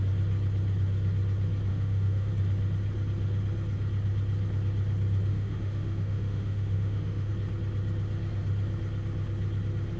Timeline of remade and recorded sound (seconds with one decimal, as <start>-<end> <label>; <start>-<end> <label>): 0.0-1.7 recorded; 1.7-2.3 remade; 2.3-5.3 recorded; 5.3-7.3 remade; 7.3-10.0 recorded